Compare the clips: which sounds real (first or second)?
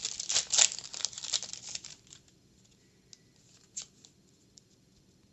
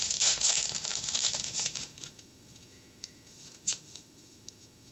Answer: first